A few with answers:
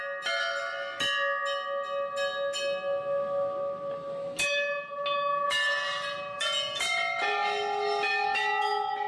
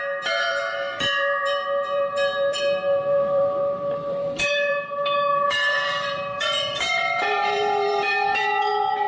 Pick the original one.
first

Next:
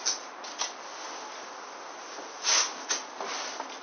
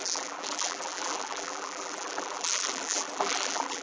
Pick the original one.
first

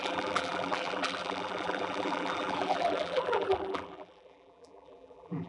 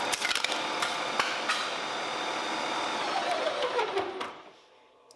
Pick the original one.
second